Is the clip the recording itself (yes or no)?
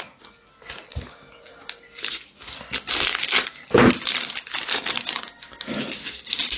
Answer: yes